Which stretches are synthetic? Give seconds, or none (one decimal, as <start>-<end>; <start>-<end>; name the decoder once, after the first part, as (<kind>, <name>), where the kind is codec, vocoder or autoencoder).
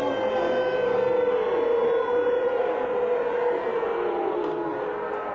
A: none